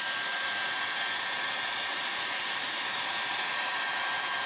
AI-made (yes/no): no